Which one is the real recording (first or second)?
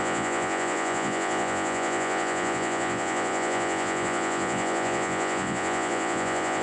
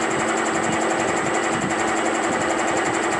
second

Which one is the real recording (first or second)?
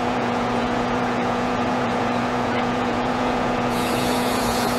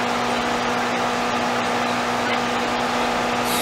second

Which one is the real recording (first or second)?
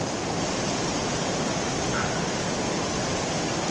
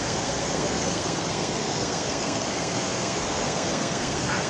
first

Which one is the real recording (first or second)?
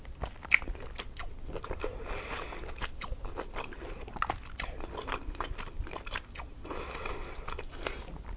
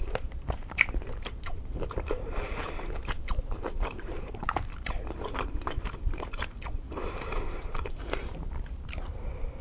first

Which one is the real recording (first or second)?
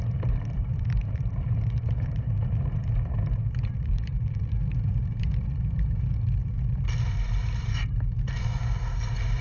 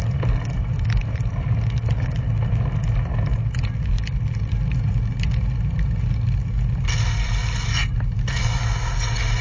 second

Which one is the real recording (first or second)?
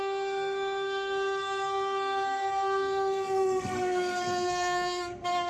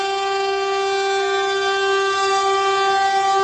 second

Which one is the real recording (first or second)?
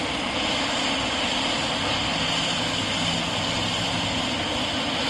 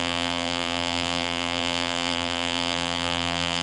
first